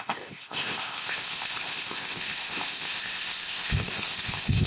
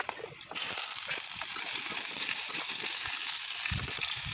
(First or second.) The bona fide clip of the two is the second